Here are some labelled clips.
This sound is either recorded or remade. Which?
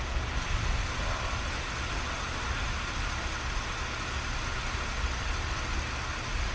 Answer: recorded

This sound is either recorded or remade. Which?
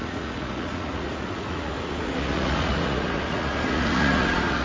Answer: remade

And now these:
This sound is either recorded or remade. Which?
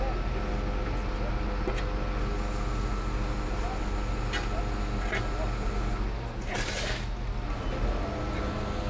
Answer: recorded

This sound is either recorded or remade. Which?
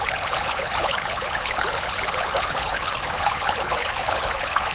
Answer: remade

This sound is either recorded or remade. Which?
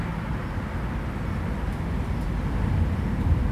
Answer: recorded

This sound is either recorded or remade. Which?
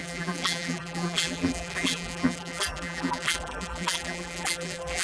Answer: remade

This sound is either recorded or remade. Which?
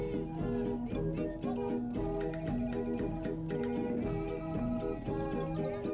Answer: recorded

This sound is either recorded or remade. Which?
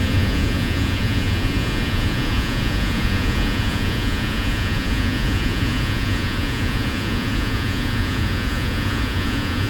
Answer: remade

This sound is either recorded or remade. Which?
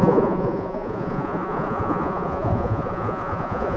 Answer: remade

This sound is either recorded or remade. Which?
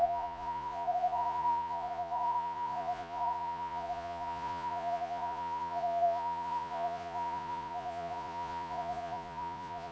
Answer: remade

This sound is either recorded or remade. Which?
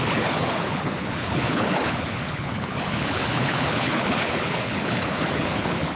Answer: remade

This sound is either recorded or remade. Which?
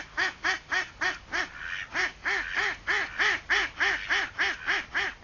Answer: recorded